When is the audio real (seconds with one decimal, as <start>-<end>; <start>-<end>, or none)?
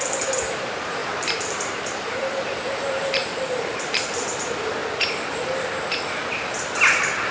4.8-6.8